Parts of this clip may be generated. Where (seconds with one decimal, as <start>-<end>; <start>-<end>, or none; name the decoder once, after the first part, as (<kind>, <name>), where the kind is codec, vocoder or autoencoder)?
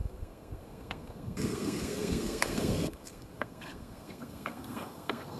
0.0-5.4 (codec, SNAC)